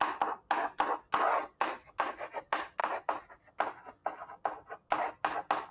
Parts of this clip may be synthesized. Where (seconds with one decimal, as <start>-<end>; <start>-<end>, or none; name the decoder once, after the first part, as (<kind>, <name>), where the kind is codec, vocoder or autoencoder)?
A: 2.8-3.3 (vocoder, BigVGAN v2)